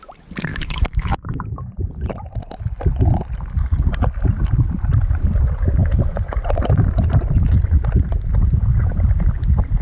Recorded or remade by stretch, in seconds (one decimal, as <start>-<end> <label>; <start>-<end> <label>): 0.0-0.5 recorded; 0.5-1.7 remade; 1.7-9.8 recorded